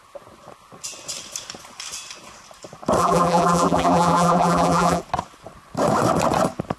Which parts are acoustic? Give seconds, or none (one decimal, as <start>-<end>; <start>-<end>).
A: 0.0-3.0; 5.0-6.8